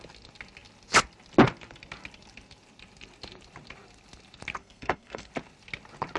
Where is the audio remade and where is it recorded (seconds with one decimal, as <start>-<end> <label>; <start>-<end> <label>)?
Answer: 0.0-4.6 recorded; 4.6-5.3 remade; 5.3-6.2 recorded